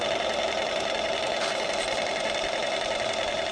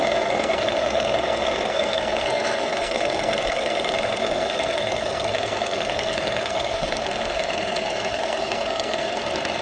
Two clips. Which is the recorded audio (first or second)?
first